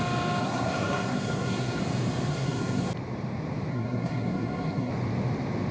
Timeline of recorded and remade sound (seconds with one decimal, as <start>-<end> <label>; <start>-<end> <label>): 0.0-0.4 recorded; 0.4-1.8 remade; 1.8-2.3 recorded; 2.3-2.9 remade; 2.9-3.7 recorded; 3.7-4.9 remade; 4.9-5.7 recorded